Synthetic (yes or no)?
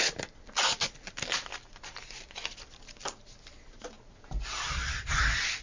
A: no